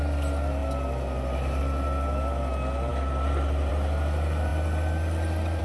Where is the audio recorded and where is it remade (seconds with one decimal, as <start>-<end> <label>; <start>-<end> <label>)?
0.0-5.6 recorded